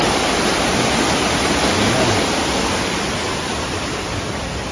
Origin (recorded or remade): recorded